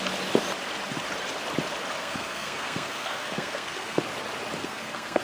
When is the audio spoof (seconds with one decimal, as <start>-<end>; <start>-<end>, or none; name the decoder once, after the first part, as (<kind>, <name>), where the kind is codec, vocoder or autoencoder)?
2.0-4.0 (codec, SNAC); 4.6-5.2